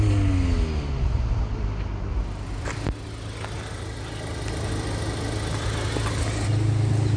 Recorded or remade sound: recorded